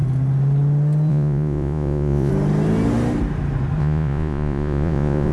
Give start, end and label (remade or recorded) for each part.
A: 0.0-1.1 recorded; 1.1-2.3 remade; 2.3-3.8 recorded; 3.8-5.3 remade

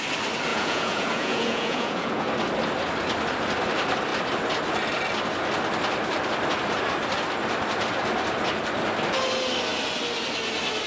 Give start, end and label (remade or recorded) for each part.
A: 0.0-0.5 recorded; 0.5-2.3 remade; 2.3-10.9 recorded

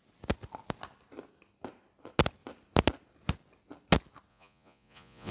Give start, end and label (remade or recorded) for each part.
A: 0.0-4.3 recorded; 4.3-5.3 remade

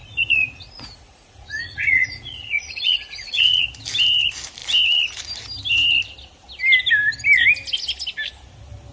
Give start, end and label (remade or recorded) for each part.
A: 0.0-3.7 remade; 3.7-8.9 recorded

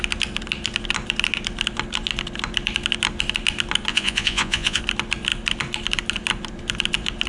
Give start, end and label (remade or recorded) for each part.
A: 0.0-3.9 recorded; 3.9-4.8 remade; 4.8-7.3 recorded